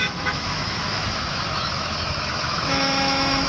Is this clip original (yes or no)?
no